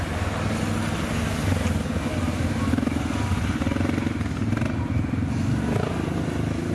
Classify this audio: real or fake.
real